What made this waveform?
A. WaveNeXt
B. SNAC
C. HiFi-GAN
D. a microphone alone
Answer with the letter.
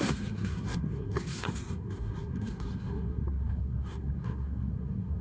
B